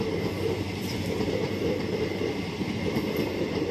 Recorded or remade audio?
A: remade